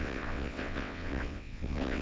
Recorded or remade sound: remade